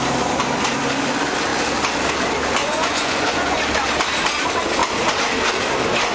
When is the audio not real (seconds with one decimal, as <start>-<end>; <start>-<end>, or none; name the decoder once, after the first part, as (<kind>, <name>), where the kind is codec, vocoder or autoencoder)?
2.6-3.6 (vocoder, Vocos)